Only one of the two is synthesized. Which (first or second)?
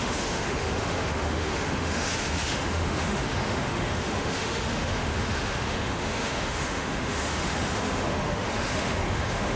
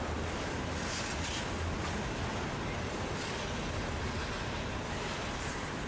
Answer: first